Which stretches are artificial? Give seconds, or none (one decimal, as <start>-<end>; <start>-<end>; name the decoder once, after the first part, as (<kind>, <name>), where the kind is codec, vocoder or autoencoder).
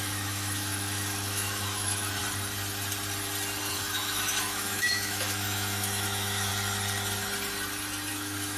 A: 0.0-2.2 (autoencoder, DAC-VAE); 3.7-6.5; 8.1-8.6